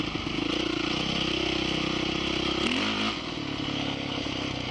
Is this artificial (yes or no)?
no